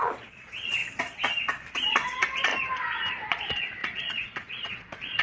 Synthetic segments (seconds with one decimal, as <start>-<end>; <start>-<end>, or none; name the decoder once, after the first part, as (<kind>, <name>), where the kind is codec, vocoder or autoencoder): 0.0-0.8 (vocoder, Vocos); 1.8-2.5; 3.3-5.2